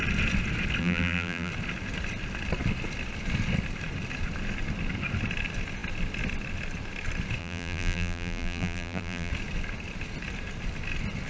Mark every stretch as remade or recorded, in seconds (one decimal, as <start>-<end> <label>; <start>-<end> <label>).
0.0-0.8 recorded; 0.8-1.5 remade; 1.5-7.4 recorded; 7.4-9.3 remade; 9.3-11.3 recorded

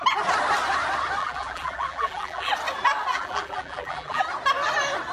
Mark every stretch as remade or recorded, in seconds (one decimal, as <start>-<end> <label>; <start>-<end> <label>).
0.0-1.2 recorded; 1.2-2.5 remade; 2.5-3.1 recorded; 3.1-4.2 remade; 4.2-5.1 recorded

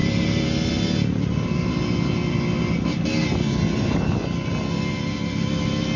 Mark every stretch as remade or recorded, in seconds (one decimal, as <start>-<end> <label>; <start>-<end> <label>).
0.0-6.0 recorded